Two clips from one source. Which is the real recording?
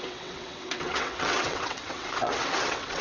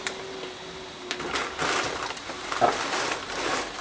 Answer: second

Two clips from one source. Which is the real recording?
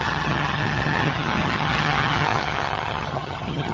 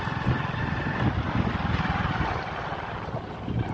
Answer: second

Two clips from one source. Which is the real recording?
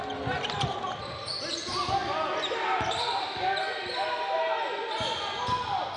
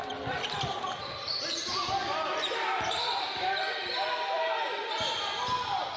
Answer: first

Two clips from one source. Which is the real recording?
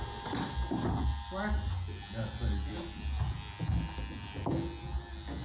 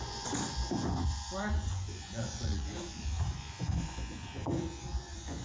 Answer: first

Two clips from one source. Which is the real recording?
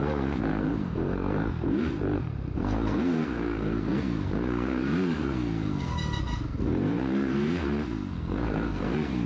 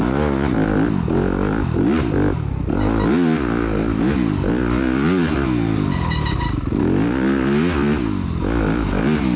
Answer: second